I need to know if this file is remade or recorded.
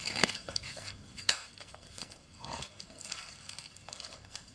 remade